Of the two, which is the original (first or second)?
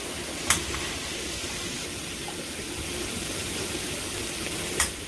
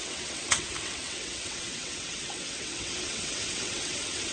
first